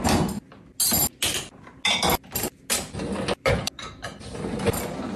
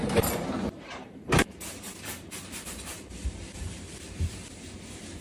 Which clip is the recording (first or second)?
first